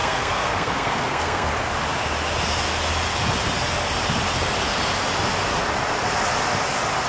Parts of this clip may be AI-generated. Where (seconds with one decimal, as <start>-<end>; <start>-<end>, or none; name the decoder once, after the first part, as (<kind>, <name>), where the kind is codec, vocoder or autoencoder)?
0.0-1.5 (codec, SNAC)